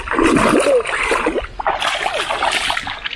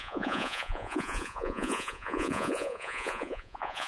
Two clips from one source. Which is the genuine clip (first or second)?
first